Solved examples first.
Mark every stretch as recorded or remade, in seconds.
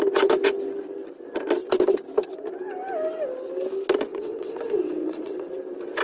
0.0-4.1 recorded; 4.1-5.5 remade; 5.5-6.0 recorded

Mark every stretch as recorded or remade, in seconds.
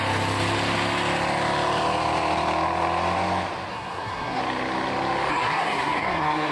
0.0-3.7 recorded; 3.7-4.4 remade; 4.4-5.3 recorded; 5.3-6.5 remade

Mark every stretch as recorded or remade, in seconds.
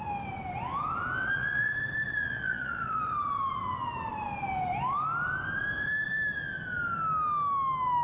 0.0-1.2 recorded; 1.2-1.7 remade; 1.7-2.1 recorded; 2.1-3.1 remade; 3.1-8.0 recorded